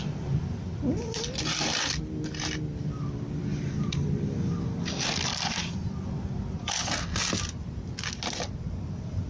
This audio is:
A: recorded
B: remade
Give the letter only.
A